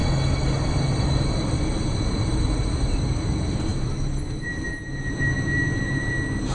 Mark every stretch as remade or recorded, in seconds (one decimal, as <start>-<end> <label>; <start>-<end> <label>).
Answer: 0.0-2.1 recorded; 2.1-3.7 remade; 3.7-4.3 recorded; 4.3-6.5 remade